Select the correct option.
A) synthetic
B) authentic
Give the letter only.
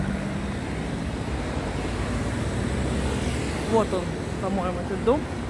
B